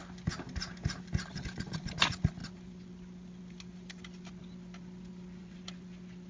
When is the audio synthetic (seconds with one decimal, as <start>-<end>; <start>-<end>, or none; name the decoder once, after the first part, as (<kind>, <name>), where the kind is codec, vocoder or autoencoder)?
none